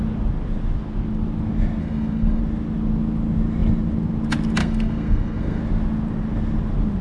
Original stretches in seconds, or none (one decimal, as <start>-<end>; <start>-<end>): 0.0-1.8; 2.4-4.6; 5.6-7.0